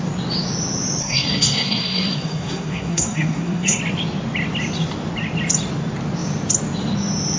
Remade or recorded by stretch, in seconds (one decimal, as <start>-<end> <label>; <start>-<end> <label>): 0.0-1.0 recorded; 1.0-3.8 remade; 3.8-7.4 recorded